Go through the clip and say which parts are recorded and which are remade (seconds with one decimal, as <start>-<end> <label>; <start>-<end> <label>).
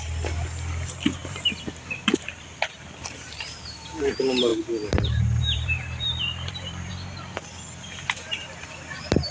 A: 0.0-1.2 recorded; 1.2-3.5 remade; 3.5-4.5 recorded; 4.5-6.9 remade; 6.9-9.3 recorded